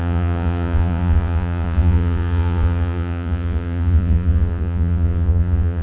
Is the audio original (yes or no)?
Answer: no